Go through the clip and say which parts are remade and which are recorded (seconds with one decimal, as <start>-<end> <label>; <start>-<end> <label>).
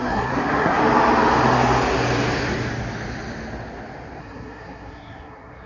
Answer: 0.0-0.8 remade; 0.8-4.2 recorded; 4.2-5.7 remade